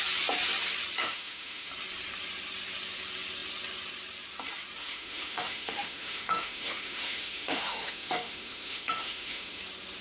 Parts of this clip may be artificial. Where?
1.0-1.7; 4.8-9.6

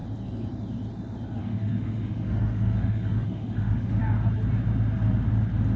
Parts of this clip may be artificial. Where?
1.4-4.0

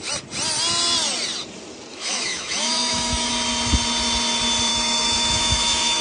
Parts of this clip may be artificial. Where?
1.9-3.3; 4.7-6.0

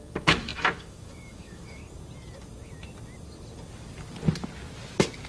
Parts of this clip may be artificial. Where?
0.0-1.8

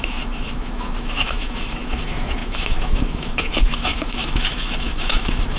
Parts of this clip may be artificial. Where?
0.0-5.6

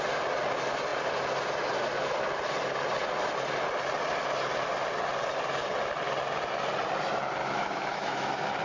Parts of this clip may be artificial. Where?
7.4-8.6